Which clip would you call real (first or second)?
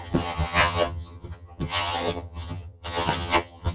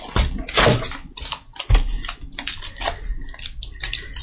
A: second